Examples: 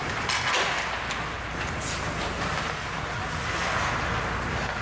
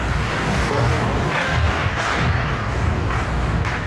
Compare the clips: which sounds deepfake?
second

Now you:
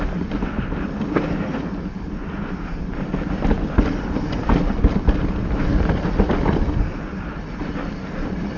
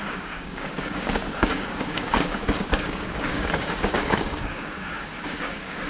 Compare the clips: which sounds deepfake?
second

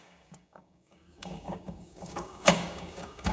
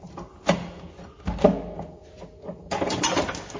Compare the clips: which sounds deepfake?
first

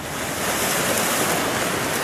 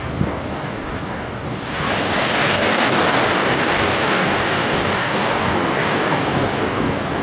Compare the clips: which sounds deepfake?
second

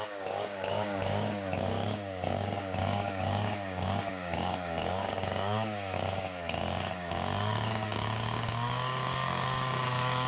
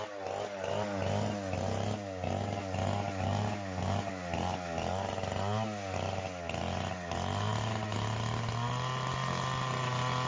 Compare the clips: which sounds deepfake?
first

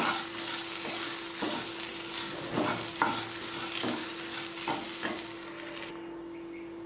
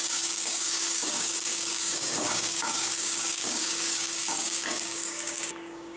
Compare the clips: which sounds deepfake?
second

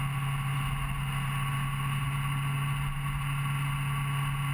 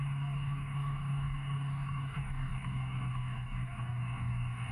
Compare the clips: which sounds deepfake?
second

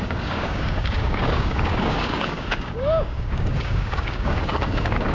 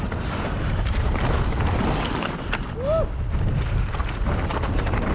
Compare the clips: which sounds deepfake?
first